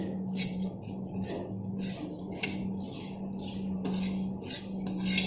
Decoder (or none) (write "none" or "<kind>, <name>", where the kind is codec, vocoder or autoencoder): none